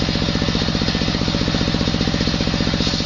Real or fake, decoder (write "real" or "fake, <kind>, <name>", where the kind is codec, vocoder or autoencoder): real